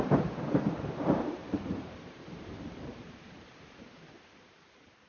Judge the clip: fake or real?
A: fake